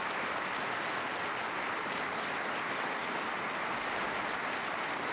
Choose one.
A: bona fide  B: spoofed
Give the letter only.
A